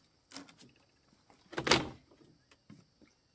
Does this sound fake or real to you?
real